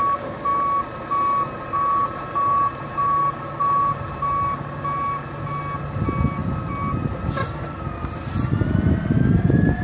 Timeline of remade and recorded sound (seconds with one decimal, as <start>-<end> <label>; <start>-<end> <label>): 0.0-9.8 recorded